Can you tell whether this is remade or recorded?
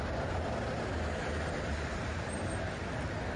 remade